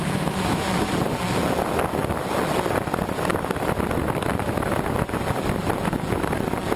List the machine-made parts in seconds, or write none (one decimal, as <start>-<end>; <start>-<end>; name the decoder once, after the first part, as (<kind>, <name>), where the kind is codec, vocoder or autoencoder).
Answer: 0.0-0.9 (autoencoder, DAC-VAE)